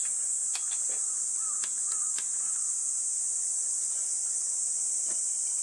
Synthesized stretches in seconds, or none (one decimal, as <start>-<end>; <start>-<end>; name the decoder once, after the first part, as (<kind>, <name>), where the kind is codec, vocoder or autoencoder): 1.8-4.8 (vocoder, Vocos)